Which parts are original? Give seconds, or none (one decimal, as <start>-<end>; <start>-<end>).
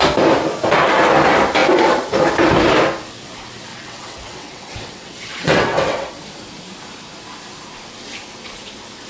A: 0.0-3.7; 6.1-9.1